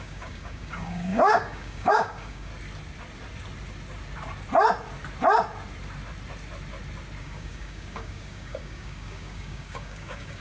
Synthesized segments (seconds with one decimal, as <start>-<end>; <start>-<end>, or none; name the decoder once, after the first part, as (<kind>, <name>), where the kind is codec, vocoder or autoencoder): 0.0-2.5 (codec, DAC); 7.2-10.4